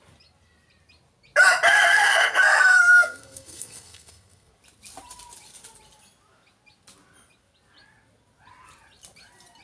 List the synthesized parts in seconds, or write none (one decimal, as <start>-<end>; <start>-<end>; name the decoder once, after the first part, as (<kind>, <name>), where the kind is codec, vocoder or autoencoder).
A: 1.7-4.5 (codec, SNAC)